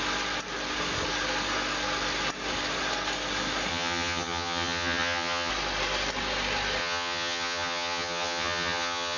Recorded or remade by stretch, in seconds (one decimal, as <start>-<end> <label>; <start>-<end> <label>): 0.0-3.7 recorded; 3.7-5.5 remade; 5.5-6.8 recorded; 6.8-9.2 remade